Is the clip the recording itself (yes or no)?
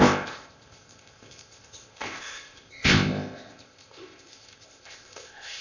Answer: no